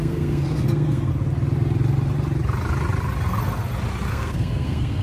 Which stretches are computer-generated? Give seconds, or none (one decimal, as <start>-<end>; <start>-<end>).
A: 0.0-1.1; 4.1-5.0